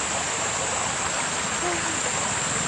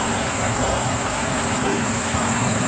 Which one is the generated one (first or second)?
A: second